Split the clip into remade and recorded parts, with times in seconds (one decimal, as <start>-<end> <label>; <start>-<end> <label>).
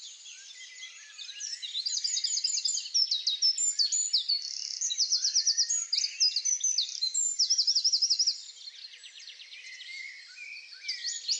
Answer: 0.0-4.6 recorded; 4.6-5.7 remade; 5.7-11.4 recorded